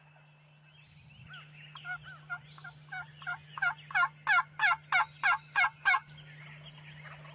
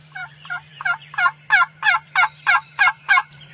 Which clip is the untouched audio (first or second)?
first